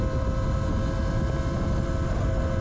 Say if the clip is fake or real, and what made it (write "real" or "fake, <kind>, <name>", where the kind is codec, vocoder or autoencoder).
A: real